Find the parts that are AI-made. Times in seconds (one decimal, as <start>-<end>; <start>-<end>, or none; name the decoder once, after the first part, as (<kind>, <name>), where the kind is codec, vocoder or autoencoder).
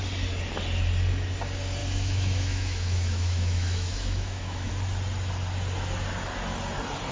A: 1.8-4.7 (autoencoder, DAC-VAE)